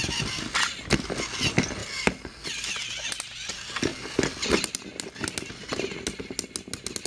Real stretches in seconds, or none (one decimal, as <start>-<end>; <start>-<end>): 0.0-7.1